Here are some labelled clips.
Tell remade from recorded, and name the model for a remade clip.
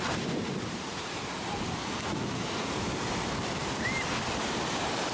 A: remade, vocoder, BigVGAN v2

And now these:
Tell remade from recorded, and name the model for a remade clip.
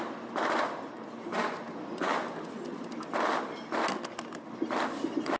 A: recorded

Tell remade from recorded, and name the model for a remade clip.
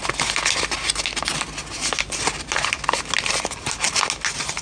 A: recorded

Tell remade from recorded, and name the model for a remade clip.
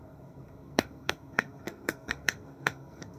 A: remade, codec, SNAC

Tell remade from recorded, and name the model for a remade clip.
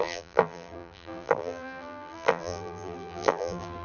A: remade, vocoder, BigVGAN v2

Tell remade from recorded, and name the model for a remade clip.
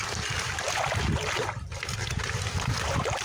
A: remade, vocoder, BigVGAN v2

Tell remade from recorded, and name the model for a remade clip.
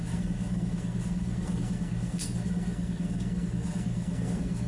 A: remade, codec, SNAC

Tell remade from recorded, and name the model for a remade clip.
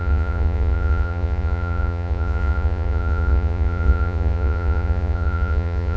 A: remade, vocoder, Vocos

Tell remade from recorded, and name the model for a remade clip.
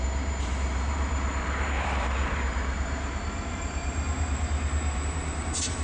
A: remade, vocoder, BigVGAN v2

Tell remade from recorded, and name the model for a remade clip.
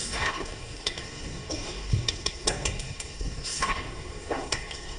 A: remade, codec, SNAC